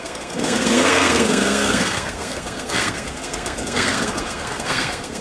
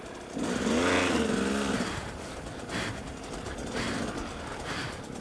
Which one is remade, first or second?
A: first